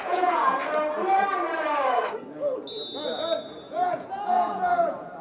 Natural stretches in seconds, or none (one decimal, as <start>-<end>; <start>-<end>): 0.6-3.7